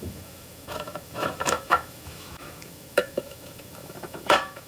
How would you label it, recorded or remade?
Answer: remade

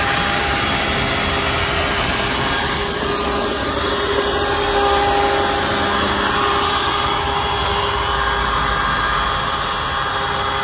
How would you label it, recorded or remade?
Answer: recorded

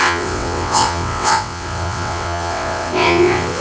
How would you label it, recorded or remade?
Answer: remade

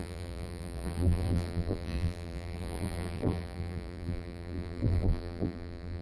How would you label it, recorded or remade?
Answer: remade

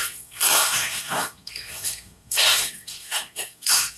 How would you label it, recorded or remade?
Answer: remade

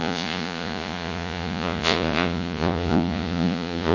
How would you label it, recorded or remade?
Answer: remade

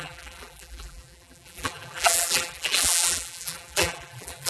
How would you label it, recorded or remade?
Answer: remade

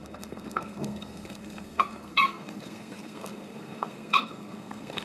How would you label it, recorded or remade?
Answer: remade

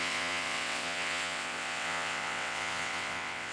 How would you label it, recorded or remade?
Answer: remade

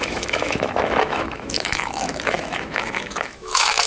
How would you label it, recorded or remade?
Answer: remade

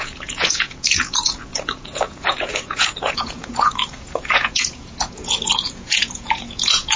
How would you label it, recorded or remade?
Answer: remade